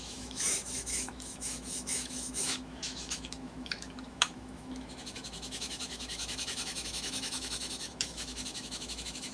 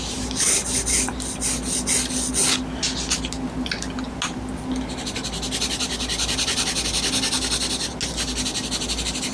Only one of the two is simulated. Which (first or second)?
first